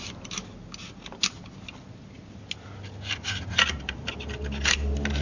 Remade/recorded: recorded